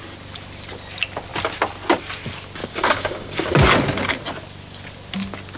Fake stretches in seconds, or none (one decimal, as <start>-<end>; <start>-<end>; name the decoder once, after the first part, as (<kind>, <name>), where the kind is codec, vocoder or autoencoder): 2.6-3.4 (codec, DAC)